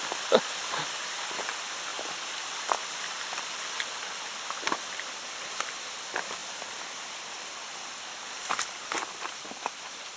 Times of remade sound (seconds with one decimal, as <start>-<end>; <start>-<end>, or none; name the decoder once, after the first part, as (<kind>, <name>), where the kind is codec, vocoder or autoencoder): none